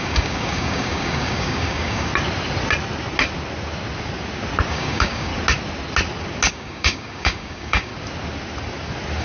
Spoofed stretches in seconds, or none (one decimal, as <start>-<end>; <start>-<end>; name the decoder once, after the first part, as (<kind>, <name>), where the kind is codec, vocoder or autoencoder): 0.0-2.1 (codec, DAC); 4.7-5.3; 6.5-7.9